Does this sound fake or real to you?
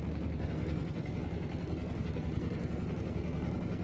fake